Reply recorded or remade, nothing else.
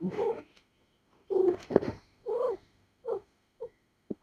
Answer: remade